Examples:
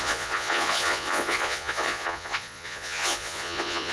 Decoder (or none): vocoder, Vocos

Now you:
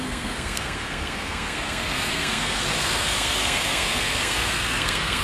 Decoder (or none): codec, SNAC